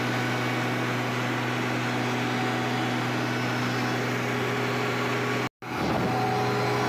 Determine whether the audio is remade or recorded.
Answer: recorded